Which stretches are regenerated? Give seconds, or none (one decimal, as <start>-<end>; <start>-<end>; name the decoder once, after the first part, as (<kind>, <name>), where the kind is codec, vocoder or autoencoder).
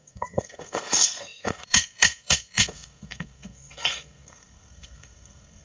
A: 0.0-5.6 (codec, SNAC)